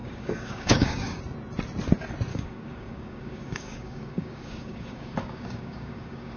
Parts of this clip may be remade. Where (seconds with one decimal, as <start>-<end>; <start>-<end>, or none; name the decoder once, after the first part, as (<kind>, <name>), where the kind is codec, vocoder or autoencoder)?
0.0-1.2 (codec, DAC); 2.3-6.4